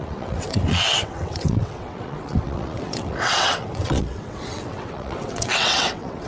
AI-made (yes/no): yes